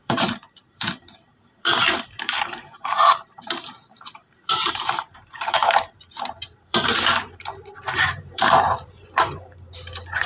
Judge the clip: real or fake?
fake